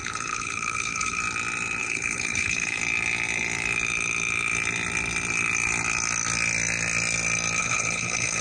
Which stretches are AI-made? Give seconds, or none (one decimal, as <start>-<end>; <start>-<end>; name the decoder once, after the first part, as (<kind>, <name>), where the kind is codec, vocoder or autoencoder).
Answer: 0.0-1.2 (codec, HILCodec); 1.8-2.8; 7.6-8.4